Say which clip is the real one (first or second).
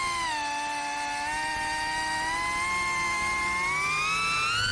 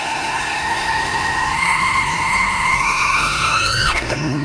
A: first